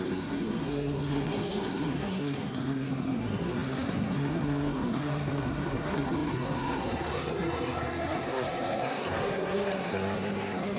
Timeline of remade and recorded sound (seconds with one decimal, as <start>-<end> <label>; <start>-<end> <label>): 0.0-10.8 remade